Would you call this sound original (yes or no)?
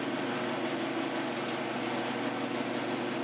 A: yes